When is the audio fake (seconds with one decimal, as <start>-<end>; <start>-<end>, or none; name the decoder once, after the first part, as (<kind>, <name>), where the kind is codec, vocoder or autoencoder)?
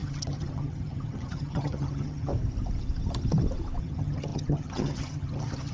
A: 0.0-2.3 (vocoder, HiFi-GAN); 3.8-5.7